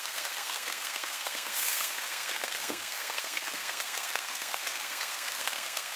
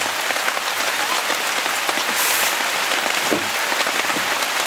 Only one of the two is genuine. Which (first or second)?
second